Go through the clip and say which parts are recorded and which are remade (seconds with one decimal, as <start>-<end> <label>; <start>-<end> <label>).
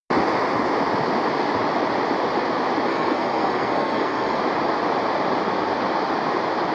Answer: 0.0-2.9 recorded; 2.9-4.4 remade; 4.4-6.7 recorded